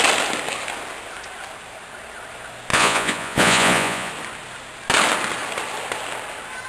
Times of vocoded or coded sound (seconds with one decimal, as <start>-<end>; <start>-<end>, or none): 2.7-4.1